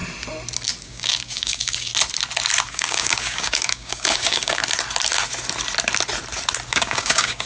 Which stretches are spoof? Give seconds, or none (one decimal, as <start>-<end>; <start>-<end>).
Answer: 0.8-1.9; 2.7-4.6; 6.7-7.5